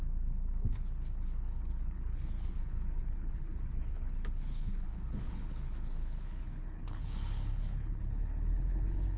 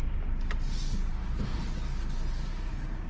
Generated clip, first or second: first